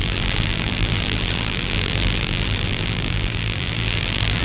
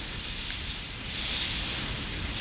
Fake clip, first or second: first